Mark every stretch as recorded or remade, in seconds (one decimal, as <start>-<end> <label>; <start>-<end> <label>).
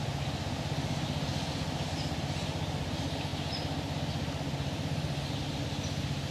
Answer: 0.0-6.3 recorded